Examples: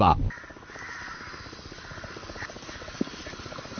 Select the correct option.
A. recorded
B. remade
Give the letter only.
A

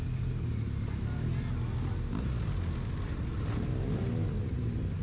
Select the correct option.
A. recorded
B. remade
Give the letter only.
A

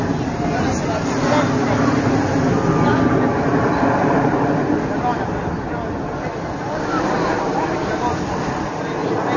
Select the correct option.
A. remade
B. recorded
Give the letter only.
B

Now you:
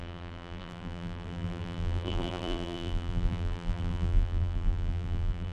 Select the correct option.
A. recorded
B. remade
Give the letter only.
B